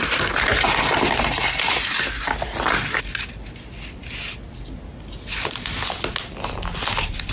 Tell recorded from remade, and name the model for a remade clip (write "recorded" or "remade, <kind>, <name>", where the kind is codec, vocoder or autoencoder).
recorded